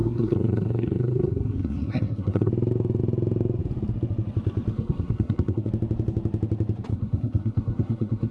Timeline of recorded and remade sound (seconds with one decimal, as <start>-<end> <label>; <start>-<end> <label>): 0.0-2.5 remade; 2.5-4.7 recorded; 4.7-5.7 remade; 5.7-6.9 recorded; 6.9-8.3 remade